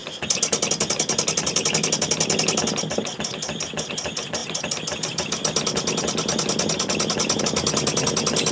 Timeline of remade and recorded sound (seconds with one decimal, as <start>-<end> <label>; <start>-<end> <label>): 0.0-8.5 recorded

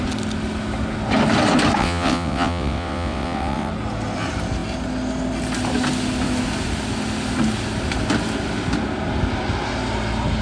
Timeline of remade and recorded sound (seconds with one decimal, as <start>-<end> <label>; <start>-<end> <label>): 0.0-1.8 recorded; 1.8-3.7 remade; 3.7-10.4 recorded

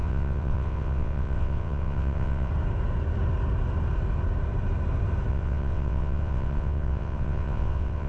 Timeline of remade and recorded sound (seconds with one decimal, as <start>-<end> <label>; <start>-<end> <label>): 0.0-2.5 remade; 2.5-5.3 recorded; 5.3-8.1 remade

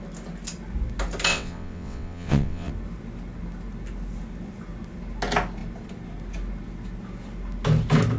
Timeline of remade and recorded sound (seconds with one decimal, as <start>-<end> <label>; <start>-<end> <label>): 0.0-1.3 recorded; 1.3-2.7 remade; 2.7-8.2 recorded

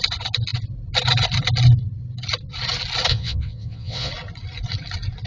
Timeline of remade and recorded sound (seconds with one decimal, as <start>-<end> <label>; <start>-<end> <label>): 0.0-3.1 recorded; 3.1-4.1 remade; 4.1-5.3 recorded